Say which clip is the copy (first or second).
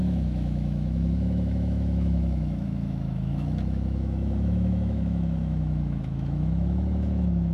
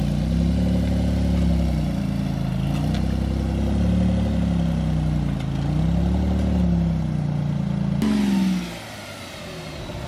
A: first